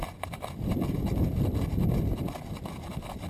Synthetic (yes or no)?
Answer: no